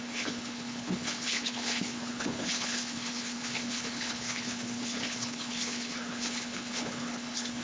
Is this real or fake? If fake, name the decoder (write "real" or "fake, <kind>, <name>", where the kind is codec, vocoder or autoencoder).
fake, codec, HILCodec